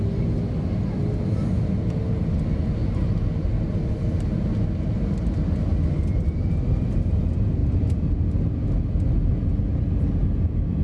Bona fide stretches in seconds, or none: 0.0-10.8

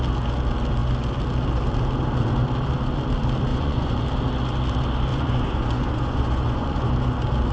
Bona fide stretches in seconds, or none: 0.0-3.5; 4.0-5.1; 6.9-7.5

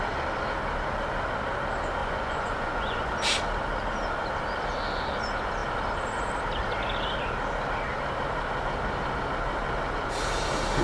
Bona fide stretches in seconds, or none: 0.0-2.0; 3.1-10.8

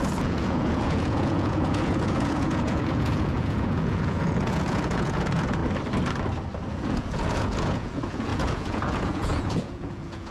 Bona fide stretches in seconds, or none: 5.6-6.7

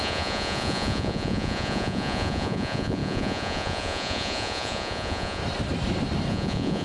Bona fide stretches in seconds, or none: 5.4-6.3

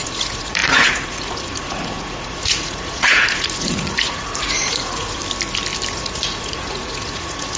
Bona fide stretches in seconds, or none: 5.2-5.9

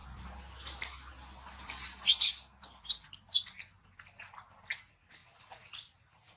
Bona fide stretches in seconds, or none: 0.0-6.4